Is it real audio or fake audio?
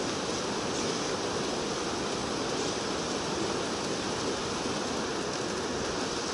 real